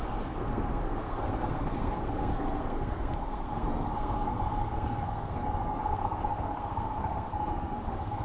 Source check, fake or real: fake